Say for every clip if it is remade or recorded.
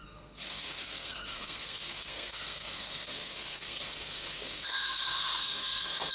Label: remade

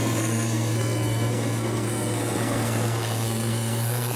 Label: remade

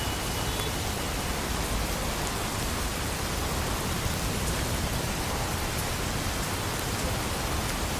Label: recorded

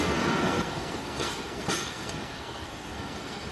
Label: remade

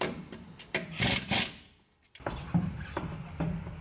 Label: recorded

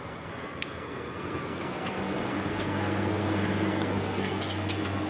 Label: remade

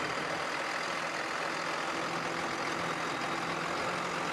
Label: recorded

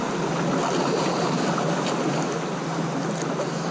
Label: recorded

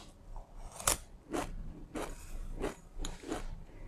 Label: recorded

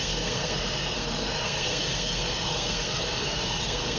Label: remade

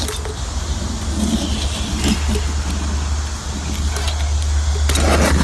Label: recorded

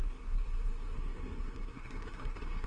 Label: remade